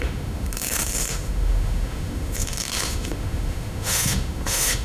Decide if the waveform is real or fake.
fake